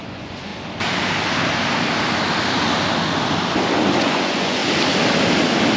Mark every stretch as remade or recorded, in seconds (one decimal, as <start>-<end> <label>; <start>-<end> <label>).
0.0-0.5 remade; 0.5-4.0 recorded; 4.0-4.6 remade; 4.6-5.8 recorded